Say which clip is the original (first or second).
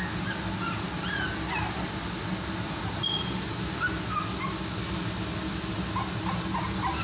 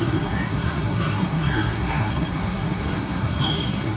first